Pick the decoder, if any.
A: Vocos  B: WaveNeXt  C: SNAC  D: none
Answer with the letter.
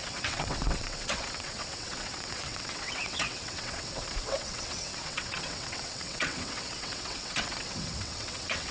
B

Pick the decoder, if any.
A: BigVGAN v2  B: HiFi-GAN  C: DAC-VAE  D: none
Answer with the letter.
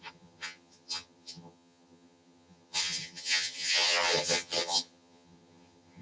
B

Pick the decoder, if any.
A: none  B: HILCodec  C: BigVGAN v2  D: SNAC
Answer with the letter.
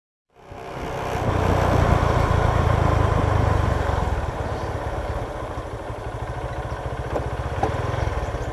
A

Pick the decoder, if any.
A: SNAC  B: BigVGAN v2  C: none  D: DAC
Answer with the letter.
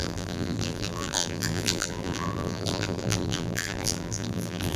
B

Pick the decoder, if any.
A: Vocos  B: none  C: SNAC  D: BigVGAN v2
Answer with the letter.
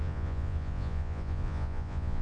A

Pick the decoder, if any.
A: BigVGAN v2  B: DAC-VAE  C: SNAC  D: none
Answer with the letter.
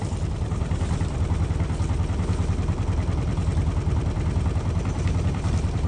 A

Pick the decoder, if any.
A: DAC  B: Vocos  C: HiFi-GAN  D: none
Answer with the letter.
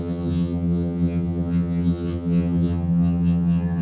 C